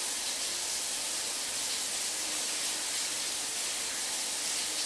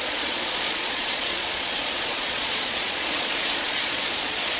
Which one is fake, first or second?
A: second